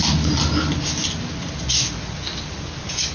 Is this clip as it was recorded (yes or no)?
yes